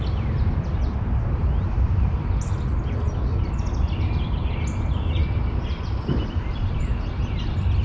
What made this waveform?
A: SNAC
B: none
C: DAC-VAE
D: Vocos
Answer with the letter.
B